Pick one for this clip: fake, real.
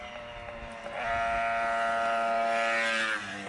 real